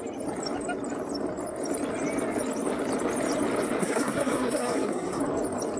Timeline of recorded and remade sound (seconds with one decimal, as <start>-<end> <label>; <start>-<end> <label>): 0.0-3.8 recorded; 3.8-5.2 remade; 5.2-5.8 recorded